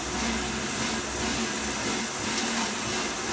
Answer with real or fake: real